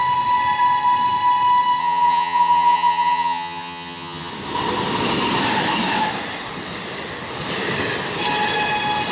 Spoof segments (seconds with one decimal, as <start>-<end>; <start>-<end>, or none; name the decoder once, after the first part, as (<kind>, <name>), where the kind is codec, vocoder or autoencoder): 1.8-4.3 (vocoder, HiFi-GAN)